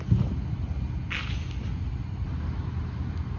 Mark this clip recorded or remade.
recorded